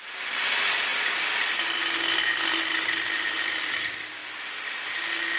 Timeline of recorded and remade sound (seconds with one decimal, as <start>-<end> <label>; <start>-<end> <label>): 0.0-5.4 recorded